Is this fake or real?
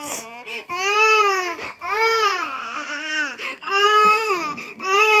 fake